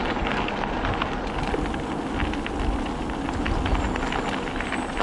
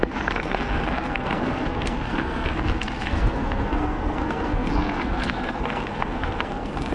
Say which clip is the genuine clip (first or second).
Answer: first